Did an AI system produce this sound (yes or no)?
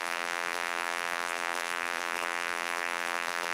yes